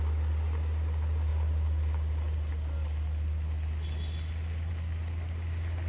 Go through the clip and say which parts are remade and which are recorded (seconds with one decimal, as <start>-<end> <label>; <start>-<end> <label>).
0.0-5.9 recorded